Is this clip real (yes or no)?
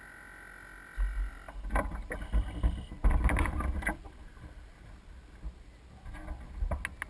yes